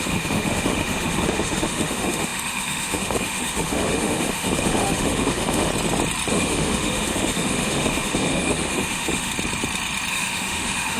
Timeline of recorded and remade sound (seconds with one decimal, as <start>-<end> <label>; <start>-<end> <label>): 0.0-5.7 remade; 5.7-6.3 recorded; 6.3-9.3 remade; 9.3-10.1 recorded; 10.1-11.0 remade

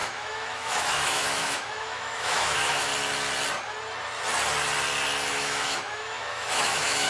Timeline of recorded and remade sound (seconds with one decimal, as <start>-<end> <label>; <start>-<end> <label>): 0.0-2.9 remade; 2.9-5.3 recorded; 5.3-7.1 remade

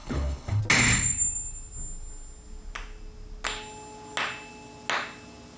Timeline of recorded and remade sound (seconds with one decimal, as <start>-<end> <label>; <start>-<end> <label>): 0.0-0.6 remade; 0.6-5.6 recorded

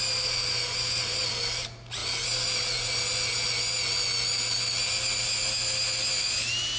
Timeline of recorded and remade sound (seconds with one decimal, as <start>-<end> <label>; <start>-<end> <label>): 0.0-6.8 recorded

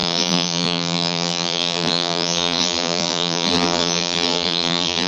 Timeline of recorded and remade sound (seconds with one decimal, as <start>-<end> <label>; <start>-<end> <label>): 0.0-5.1 remade